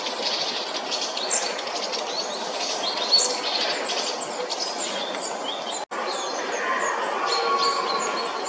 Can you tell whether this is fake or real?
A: real